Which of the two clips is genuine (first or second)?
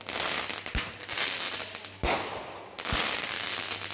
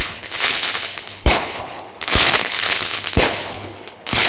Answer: first